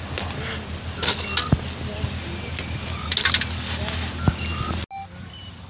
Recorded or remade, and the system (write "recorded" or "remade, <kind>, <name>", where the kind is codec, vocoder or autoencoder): recorded